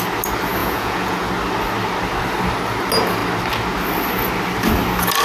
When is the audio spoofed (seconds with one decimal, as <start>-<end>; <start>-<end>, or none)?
0.6-1.3